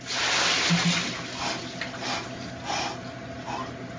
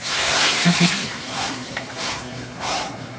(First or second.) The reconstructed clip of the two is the second